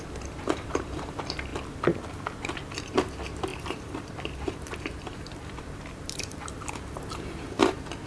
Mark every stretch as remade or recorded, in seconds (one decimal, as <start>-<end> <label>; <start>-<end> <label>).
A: 0.0-1.5 remade; 1.5-2.9 recorded; 2.9-8.1 remade